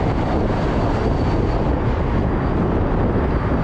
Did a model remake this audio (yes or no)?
no